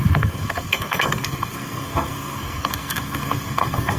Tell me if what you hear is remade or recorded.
remade